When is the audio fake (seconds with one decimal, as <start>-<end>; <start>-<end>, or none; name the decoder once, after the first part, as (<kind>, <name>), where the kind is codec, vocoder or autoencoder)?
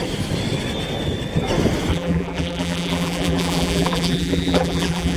1.9-5.2 (vocoder, BigVGAN v2)